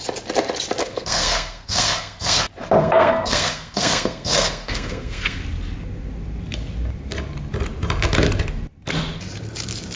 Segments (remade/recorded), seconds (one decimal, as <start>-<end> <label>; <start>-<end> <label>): 0.0-0.8 recorded; 0.8-2.4 remade; 2.4-2.8 recorded; 2.8-5.4 remade; 5.4-10.0 recorded